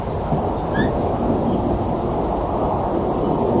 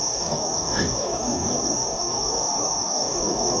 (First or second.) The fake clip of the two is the second